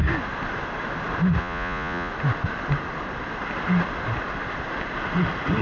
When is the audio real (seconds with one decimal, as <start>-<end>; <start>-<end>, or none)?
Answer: 0.0-1.4; 2.1-5.6